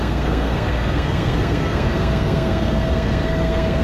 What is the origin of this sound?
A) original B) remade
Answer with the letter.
B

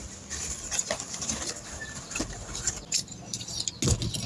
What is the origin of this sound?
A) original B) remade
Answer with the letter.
A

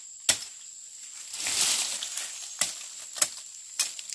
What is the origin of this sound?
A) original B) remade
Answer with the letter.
A